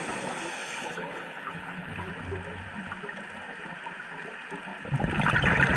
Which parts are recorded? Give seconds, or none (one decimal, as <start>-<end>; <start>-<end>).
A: 0.0-0.6; 2.1-5.8